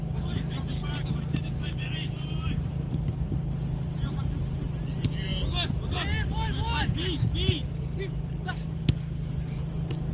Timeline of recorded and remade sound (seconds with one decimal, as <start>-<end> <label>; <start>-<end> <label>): 0.0-0.8 recorded; 0.8-4.2 remade; 4.2-10.1 recorded